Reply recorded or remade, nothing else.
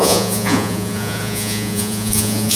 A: remade